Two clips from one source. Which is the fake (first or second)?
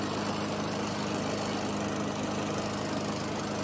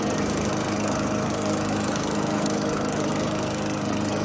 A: second